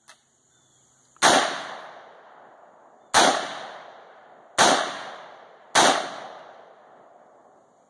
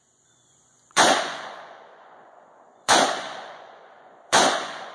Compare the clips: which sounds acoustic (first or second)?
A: first